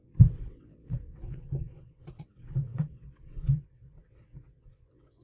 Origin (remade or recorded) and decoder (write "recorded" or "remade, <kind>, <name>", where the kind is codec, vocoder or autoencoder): remade, vocoder, WaveNeXt